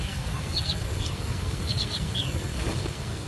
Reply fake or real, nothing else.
fake